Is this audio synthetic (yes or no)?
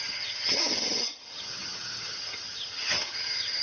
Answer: yes